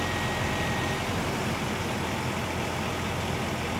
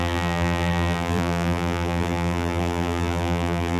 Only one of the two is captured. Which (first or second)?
first